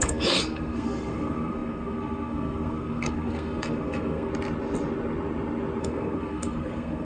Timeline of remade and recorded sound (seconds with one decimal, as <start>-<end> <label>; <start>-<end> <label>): 0.0-4.3 remade; 4.3-5.8 recorded; 5.8-7.0 remade